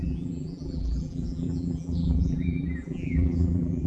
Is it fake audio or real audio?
fake